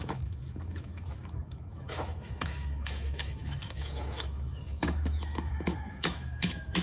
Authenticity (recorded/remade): remade